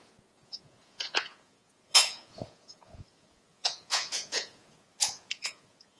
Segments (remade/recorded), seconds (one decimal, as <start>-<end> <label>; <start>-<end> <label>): 0.0-6.0 remade